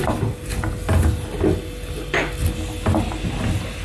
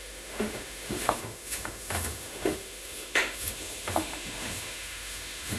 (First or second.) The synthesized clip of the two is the second